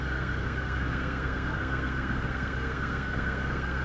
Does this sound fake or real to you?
fake